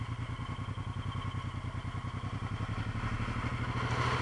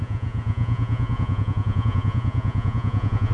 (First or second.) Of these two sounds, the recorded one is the first